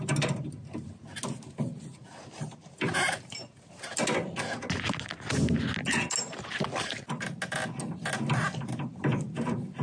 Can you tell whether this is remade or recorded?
recorded